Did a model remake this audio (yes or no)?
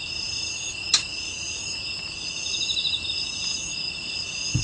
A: no